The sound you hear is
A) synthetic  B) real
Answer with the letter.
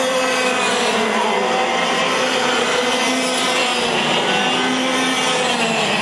B